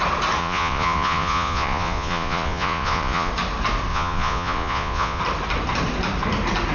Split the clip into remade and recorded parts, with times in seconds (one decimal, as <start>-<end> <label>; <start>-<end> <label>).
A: 0.0-0.4 recorded; 0.4-3.3 remade; 3.3-3.9 recorded; 3.9-5.2 remade; 5.2-6.7 recorded

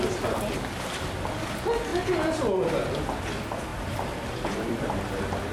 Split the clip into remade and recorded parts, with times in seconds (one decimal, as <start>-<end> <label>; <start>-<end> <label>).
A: 0.0-3.7 recorded; 3.7-5.1 remade; 5.1-5.5 recorded

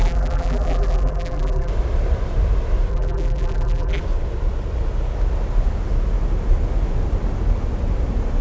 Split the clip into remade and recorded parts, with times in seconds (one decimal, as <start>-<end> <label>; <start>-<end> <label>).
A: 0.0-1.7 remade; 1.7-2.9 recorded; 2.9-4.0 remade; 4.0-8.4 recorded

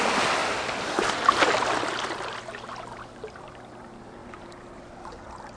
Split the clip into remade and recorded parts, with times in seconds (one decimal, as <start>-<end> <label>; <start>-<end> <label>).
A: 0.0-4.2 recorded; 4.2-4.8 remade; 4.8-5.6 recorded